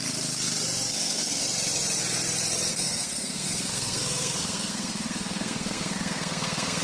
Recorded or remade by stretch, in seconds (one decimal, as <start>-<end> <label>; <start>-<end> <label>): 0.0-0.9 recorded; 0.9-1.4 remade; 1.4-2.7 recorded; 2.7-6.8 remade